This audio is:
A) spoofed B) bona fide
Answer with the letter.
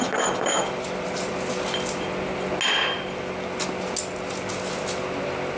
B